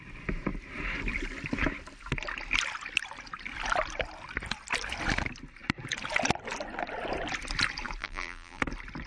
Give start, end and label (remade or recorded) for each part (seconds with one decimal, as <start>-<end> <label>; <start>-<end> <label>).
0.0-8.0 recorded; 8.0-8.6 remade; 8.6-9.1 recorded